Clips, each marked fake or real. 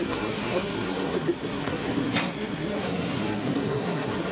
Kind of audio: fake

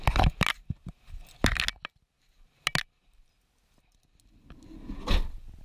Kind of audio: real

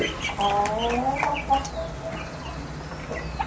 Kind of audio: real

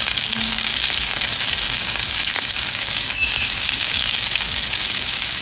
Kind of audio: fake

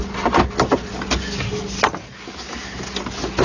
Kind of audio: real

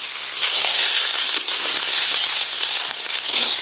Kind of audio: fake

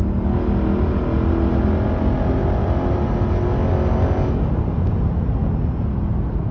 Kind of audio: real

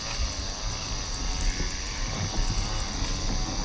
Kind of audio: real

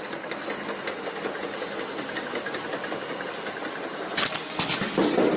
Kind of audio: real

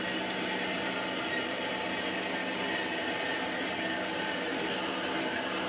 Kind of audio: real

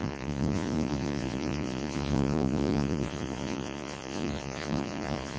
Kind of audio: fake